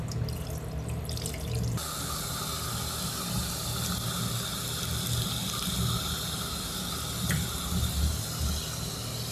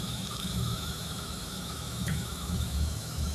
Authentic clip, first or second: first